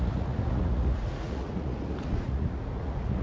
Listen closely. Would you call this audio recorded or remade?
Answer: remade